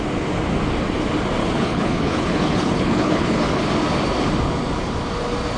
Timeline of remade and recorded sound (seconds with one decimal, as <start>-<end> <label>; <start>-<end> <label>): 0.0-1.4 recorded; 1.4-3.7 remade; 3.7-5.6 recorded